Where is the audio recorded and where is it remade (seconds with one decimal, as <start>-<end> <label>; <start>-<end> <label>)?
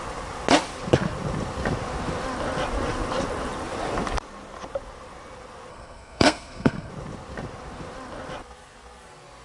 0.0-5.7 recorded; 5.7-6.9 remade; 6.9-9.4 recorded